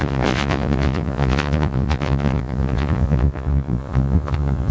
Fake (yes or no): yes